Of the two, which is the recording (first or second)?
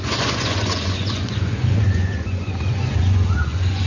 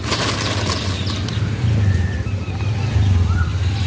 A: second